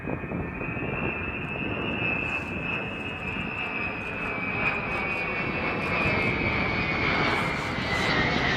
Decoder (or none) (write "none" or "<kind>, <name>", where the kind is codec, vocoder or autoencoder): none